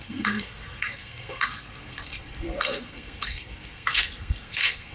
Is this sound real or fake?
fake